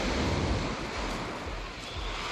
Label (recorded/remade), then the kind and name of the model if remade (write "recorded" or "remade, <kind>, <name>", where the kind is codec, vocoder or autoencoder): recorded